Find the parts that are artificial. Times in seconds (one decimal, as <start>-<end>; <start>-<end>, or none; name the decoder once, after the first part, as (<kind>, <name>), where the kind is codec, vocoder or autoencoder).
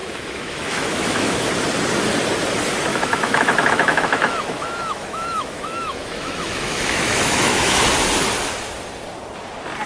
0.0-1.4 (autoencoder, DAC-VAE); 2.9-7.8